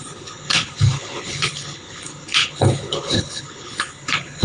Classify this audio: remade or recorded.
remade